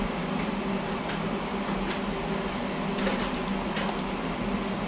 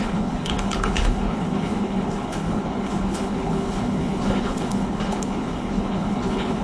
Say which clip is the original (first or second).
first